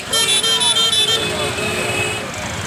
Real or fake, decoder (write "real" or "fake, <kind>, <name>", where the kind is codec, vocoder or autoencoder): real